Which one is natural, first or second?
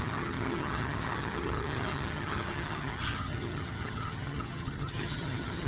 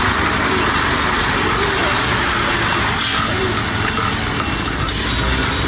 second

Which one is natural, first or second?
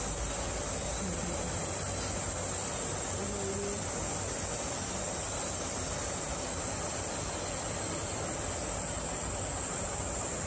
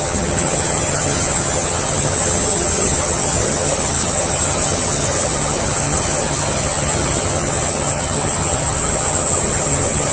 first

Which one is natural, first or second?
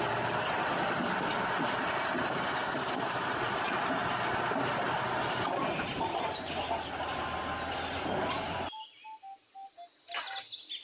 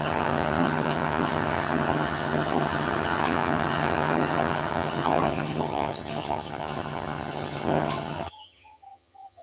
first